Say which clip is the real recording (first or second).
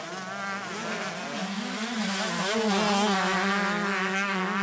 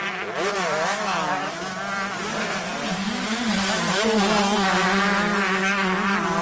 first